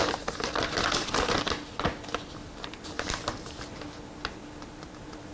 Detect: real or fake real